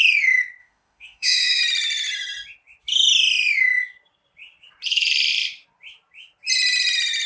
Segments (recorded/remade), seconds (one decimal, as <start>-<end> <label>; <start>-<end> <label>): 0.0-0.6 recorded; 0.6-1.6 remade; 1.6-7.3 recorded